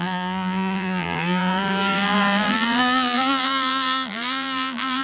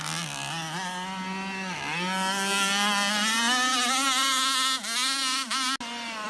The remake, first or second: first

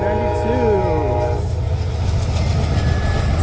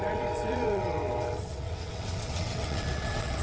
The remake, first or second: second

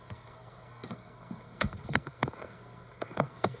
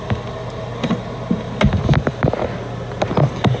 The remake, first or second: first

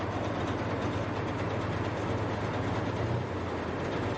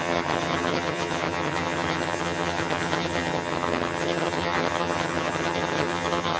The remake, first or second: second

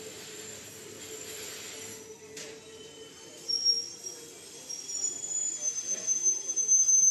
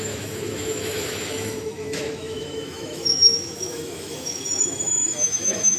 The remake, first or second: second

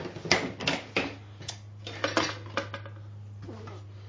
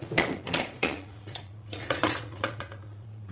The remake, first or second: second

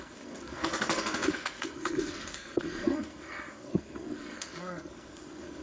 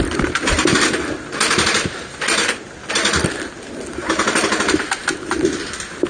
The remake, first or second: first